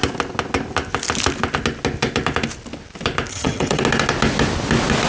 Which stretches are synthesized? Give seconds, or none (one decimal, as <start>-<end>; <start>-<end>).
3.3-3.8